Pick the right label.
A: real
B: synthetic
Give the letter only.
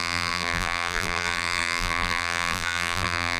B